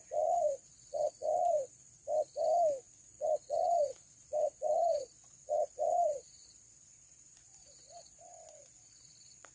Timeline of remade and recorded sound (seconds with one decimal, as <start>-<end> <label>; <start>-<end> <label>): 0.0-2.0 remade; 2.0-2.9 recorded; 2.9-9.5 remade